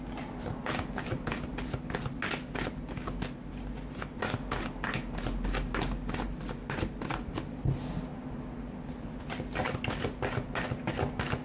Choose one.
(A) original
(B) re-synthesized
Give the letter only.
A